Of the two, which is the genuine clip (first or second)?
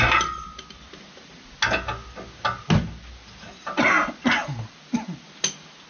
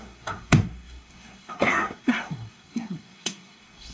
first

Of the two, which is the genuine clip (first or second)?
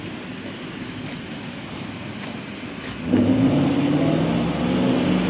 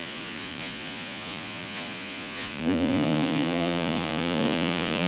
first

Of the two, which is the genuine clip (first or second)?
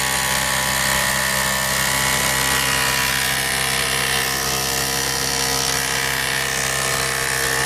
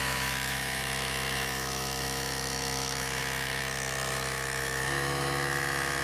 first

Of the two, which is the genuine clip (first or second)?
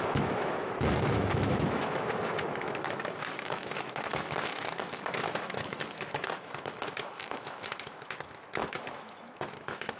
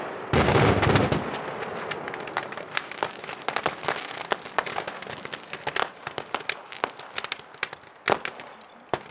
second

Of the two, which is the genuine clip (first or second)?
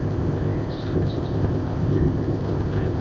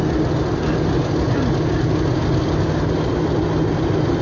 second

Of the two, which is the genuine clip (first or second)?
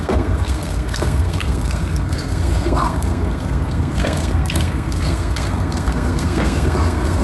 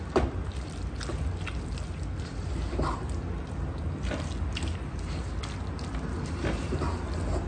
second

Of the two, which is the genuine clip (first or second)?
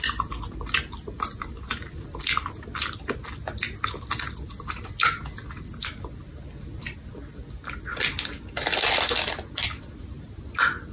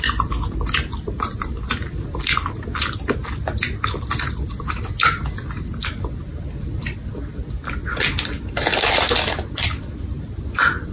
first